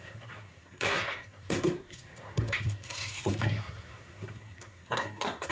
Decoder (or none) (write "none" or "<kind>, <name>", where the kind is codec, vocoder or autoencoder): codec, SNAC